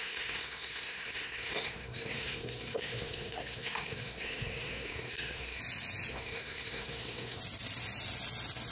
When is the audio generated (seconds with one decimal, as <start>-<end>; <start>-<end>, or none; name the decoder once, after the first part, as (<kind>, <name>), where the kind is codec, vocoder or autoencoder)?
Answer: 0.0-5.6 (codec, SNAC); 6.1-7.4